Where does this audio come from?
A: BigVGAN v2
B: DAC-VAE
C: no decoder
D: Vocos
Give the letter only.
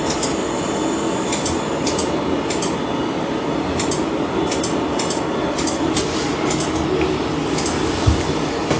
C